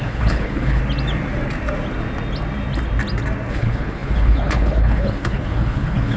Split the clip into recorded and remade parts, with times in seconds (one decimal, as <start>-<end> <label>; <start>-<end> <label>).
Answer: 0.0-0.8 remade; 0.8-3.5 recorded; 3.5-6.2 remade